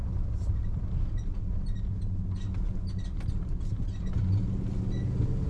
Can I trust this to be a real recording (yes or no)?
yes